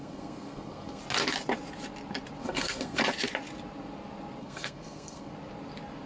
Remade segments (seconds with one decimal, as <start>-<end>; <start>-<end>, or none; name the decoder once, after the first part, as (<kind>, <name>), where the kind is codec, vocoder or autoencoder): 0.0-1.0 (codec, SNAC); 2.4-3.0; 4.4-5.3